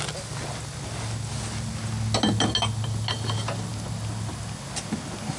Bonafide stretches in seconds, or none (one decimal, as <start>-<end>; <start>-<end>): 0.0-5.4